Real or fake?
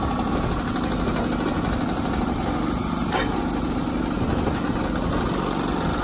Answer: real